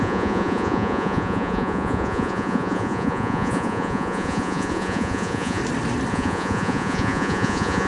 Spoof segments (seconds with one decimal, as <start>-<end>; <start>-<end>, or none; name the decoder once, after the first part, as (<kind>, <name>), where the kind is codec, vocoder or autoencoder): 0.0-5.6 (vocoder, Vocos); 6.1-7.9